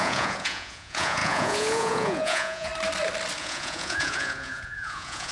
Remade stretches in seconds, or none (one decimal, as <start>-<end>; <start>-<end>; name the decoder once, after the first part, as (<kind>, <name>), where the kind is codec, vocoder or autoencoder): 0.0-2.7 (vocoder, Vocos); 3.4-5.3